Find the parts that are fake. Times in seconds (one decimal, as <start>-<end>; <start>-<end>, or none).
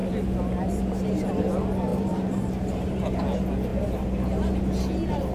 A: 0.0-0.8; 1.9-3.2; 3.7-4.6